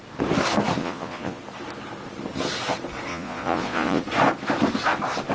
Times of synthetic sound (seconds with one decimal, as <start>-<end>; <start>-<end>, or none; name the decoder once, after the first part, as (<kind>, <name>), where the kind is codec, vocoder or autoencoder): 0.8-1.4 (vocoder, Vocos); 3.1-4.0